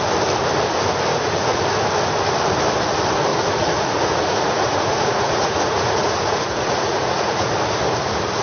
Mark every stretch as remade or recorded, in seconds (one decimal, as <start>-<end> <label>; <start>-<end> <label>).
0.0-1.1 recorded; 1.1-1.6 remade; 1.6-3.3 recorded; 3.3-7.5 remade; 7.5-8.4 recorded